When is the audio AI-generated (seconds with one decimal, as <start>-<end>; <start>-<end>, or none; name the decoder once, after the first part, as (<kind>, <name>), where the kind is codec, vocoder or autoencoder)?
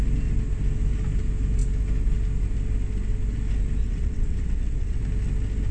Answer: 3.8-5.0 (vocoder, WaveNeXt)